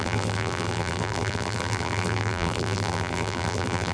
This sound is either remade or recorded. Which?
remade